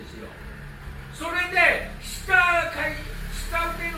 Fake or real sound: real